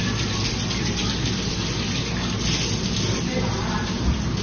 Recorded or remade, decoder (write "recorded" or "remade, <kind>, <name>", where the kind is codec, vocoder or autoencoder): recorded